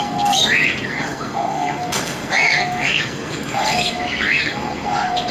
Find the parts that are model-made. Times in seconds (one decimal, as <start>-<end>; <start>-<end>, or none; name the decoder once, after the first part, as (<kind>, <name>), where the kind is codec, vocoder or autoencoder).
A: 0.0-5.3 (codec, SNAC)